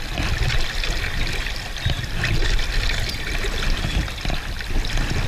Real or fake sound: real